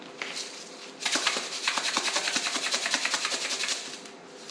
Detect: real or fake real